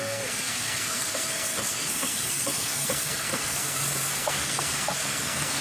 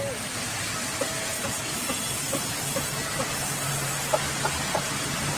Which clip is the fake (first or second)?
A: first